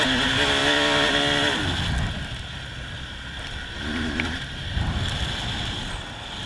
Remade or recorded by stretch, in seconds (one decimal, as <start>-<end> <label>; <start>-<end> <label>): 0.0-6.5 recorded